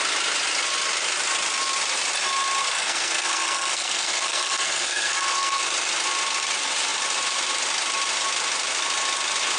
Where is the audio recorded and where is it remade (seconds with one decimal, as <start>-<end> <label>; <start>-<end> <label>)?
0.0-2.6 recorded; 2.6-5.6 remade; 5.6-9.6 recorded